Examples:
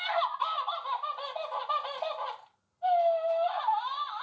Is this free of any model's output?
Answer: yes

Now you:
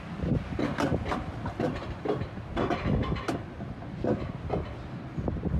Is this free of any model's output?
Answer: yes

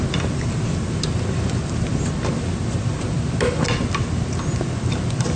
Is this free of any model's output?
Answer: yes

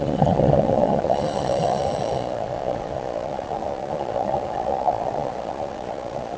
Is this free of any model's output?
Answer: no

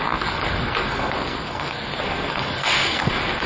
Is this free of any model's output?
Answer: no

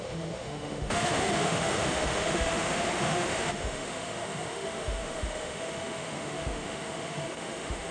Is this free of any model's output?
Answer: no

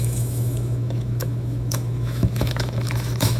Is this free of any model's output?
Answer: no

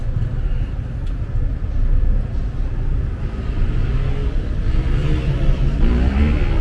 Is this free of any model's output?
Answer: yes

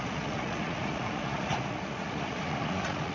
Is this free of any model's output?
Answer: no